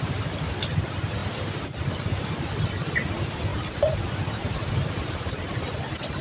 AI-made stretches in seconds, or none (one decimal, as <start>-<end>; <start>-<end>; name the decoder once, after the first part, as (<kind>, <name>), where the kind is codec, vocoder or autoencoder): none